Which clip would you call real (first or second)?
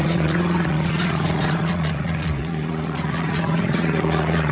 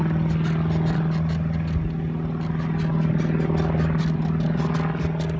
second